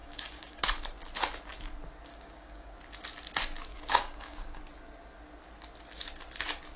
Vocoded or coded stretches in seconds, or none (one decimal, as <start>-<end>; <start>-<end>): 0.0-0.6; 2.1-2.8; 3.7-4.6